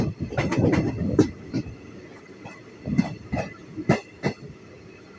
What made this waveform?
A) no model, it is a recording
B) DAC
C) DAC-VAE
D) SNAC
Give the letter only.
A